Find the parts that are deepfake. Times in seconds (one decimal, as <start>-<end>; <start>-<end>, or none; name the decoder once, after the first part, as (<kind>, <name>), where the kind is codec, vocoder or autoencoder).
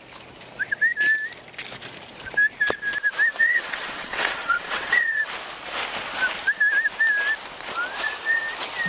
3.4-5.2 (vocoder, WaveNeXt)